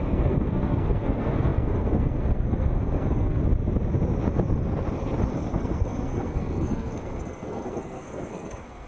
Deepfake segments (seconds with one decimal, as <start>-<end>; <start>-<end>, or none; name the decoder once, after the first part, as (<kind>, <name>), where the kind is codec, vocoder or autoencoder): 0.0-3.4 (codec, SNAC); 5.3-8.9